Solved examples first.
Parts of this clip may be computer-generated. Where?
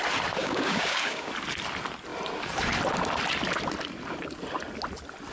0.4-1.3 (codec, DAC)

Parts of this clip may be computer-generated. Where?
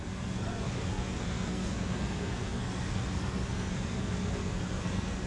0.0-5.3 (codec, SNAC)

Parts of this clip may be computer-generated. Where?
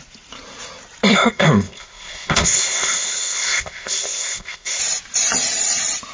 1.1-4.8 (codec, ZipCodec)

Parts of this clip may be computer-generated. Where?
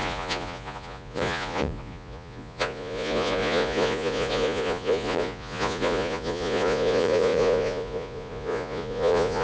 0.0-9.4 (vocoder, Vocos)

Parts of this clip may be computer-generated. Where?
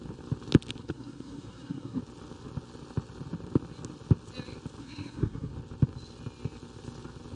0.8-2.0 (codec, SNAC); 4.8-5.5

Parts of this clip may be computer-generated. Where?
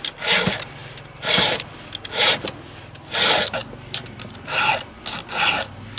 3.6-4.9 (vocoder, BigVGAN v2)